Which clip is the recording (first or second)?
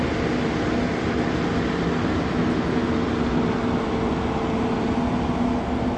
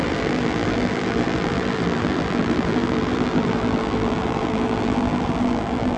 first